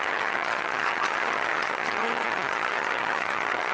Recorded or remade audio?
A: remade